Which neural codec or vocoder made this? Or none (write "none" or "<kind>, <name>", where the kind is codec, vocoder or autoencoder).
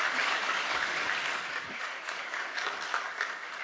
codec, DAC